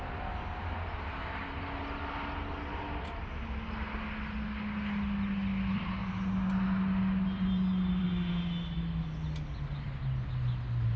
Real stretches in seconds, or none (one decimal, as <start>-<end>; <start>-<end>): 0.0-11.0